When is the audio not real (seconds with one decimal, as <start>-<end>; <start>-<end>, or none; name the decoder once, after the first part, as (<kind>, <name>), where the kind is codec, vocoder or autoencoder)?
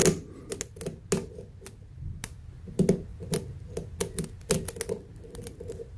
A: none